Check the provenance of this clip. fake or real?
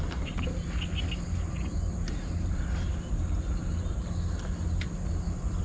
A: real